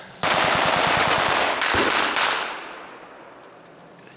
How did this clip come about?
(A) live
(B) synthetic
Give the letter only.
A